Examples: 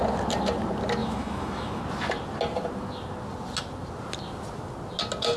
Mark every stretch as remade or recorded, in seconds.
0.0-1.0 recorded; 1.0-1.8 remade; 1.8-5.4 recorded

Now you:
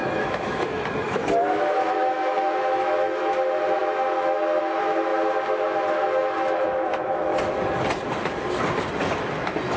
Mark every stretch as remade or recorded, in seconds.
0.0-7.3 remade; 7.3-9.8 recorded

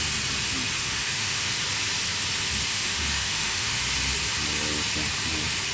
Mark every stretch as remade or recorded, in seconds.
0.0-0.8 recorded; 0.8-1.6 remade; 1.6-2.7 recorded; 2.7-3.8 remade; 3.8-5.7 recorded

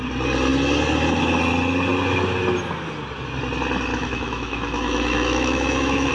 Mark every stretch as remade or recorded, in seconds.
0.0-3.9 recorded; 3.9-6.1 remade

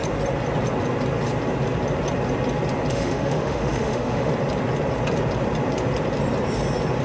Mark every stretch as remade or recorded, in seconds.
0.0-2.9 recorded; 2.9-4.3 remade; 4.3-7.0 recorded

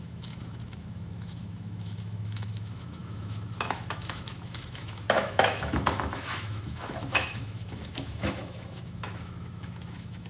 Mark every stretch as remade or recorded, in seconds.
0.0-10.3 remade